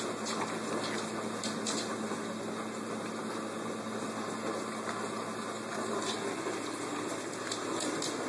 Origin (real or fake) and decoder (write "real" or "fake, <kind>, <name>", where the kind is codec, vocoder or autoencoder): real